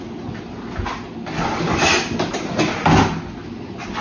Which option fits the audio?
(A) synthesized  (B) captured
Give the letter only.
B